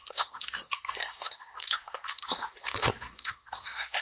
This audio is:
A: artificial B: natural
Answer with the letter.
A